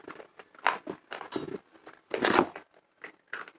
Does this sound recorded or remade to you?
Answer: recorded